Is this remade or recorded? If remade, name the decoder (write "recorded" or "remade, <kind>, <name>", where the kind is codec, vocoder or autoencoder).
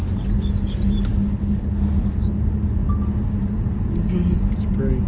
recorded